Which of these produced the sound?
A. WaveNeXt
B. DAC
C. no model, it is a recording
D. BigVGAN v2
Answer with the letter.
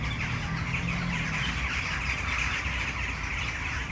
C